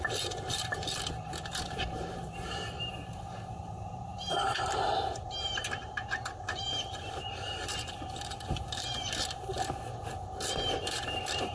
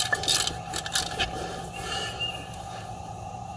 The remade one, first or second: first